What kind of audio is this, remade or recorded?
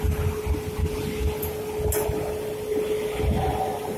recorded